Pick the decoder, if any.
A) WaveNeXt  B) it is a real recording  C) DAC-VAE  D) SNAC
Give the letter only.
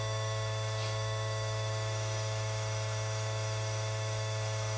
C